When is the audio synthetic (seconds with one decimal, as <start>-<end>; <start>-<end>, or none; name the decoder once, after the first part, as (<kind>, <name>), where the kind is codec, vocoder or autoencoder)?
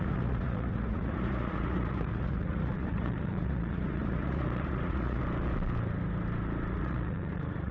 0.0-5.2 (vocoder, Vocos); 6.7-7.7